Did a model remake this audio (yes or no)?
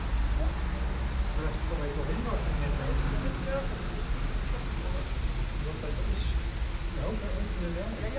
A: no